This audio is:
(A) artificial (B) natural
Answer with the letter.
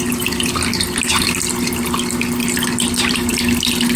B